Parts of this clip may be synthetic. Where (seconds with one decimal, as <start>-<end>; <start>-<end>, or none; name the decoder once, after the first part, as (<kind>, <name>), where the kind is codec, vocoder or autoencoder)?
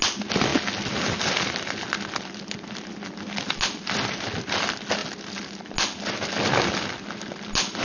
none